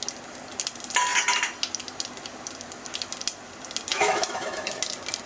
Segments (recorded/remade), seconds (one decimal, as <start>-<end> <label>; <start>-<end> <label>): 0.0-3.9 recorded; 3.9-4.8 remade; 4.8-5.3 recorded